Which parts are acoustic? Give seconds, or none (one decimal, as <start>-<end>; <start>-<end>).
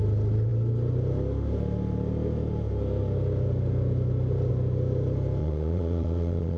0.0-5.4